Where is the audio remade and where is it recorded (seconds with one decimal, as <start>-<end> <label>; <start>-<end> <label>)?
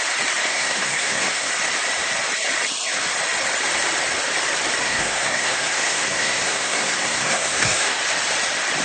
0.0-0.5 recorded; 0.5-1.5 remade; 1.5-4.8 recorded; 4.8-8.0 remade; 8.0-8.8 recorded